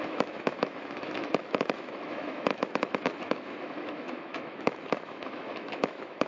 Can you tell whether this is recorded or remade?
remade